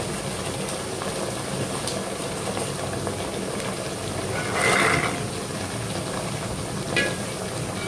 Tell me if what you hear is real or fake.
real